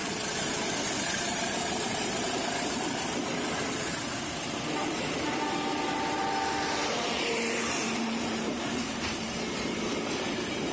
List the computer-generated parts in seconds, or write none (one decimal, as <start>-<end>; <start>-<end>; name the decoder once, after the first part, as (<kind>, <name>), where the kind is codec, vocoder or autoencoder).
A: 0.0-10.7 (vocoder, BigVGAN v2)